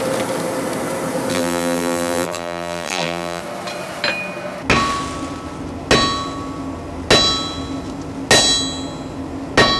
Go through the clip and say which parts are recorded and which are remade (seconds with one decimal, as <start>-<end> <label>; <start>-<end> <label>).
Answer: 0.0-1.3 recorded; 1.3-3.4 remade; 3.4-9.8 recorded